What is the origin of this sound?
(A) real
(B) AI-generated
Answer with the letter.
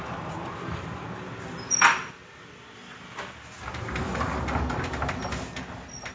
A